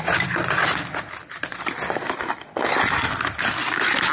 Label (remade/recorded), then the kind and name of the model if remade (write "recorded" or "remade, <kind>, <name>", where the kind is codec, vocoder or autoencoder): recorded